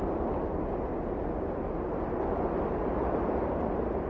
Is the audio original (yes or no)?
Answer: yes